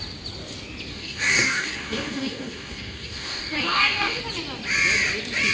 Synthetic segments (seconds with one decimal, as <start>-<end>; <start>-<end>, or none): 0.9-4.2